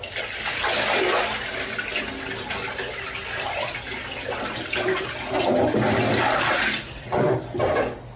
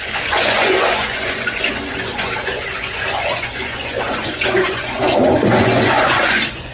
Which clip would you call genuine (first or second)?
first